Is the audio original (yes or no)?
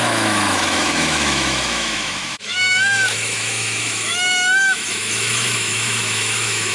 no